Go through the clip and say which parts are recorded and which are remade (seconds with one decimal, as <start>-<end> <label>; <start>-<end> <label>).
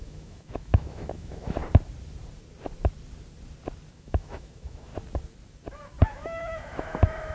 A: 0.0-1.6 remade; 1.6-3.9 recorded; 3.9-4.9 remade; 4.9-6.1 recorded; 6.1-7.3 remade